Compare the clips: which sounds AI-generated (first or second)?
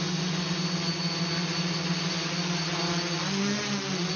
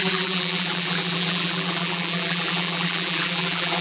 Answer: second